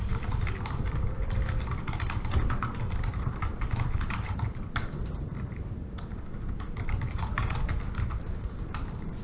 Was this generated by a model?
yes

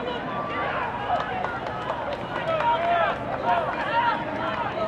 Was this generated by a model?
no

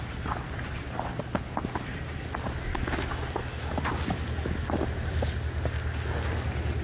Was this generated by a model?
no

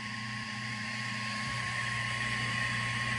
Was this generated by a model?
yes